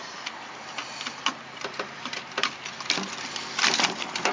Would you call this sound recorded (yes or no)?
no